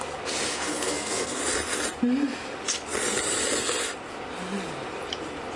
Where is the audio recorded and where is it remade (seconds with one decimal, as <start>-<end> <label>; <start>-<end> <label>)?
0.0-0.5 recorded; 0.5-1.4 remade; 1.4-5.6 recorded